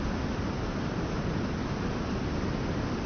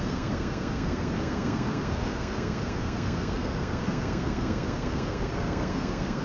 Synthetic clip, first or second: second